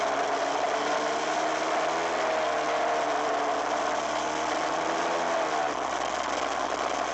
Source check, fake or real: real